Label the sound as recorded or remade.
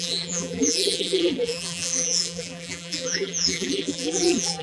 remade